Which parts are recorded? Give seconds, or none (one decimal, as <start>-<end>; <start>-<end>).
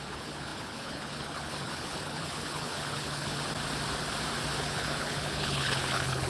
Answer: 3.3-4.6